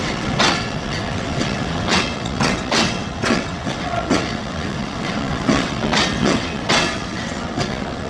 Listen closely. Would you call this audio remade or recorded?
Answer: remade